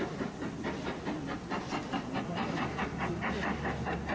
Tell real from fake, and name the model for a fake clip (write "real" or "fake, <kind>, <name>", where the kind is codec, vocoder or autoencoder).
real